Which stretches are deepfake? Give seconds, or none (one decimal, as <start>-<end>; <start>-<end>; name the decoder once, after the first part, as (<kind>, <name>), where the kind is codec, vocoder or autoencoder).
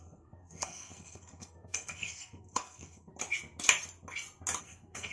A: 0.0-3.1 (codec, SNAC); 4.6-5.1